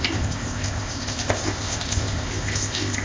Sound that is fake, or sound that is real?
fake